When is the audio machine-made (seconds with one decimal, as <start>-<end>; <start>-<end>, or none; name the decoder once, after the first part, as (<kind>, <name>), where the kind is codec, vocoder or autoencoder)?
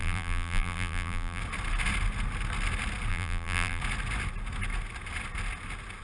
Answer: 0.0-1.4 (vocoder, BigVGAN v2); 3.1-3.8